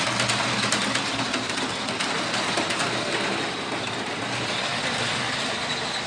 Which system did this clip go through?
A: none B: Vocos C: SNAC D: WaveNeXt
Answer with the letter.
A